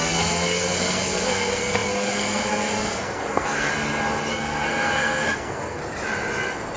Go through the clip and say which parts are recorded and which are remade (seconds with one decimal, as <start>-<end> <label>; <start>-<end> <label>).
0.0-3.7 remade; 3.7-4.3 recorded; 4.3-5.8 remade; 5.8-6.8 recorded